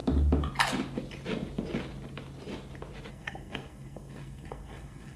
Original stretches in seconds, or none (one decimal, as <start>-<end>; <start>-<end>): 0.0-3.1